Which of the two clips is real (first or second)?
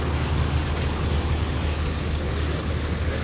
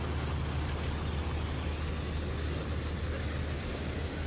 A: second